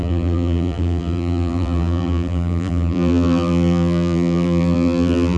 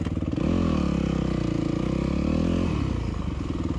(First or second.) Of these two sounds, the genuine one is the second